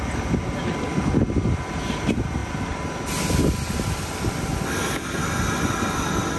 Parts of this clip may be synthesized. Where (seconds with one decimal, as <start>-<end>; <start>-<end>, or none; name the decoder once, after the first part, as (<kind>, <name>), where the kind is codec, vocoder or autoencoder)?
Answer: none